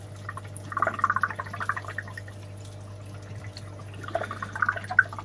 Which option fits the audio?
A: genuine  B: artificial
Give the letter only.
A